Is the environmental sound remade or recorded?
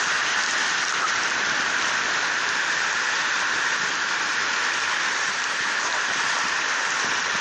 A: recorded